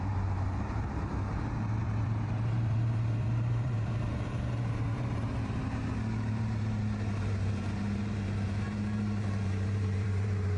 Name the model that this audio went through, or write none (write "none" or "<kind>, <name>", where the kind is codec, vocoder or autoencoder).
vocoder, BigVGAN v2